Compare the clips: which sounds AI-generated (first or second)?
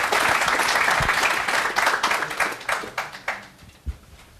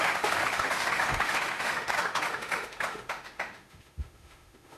second